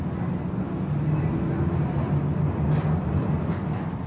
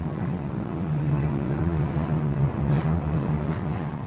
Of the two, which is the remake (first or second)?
second